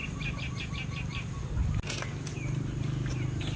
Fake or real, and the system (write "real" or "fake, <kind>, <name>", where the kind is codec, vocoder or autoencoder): real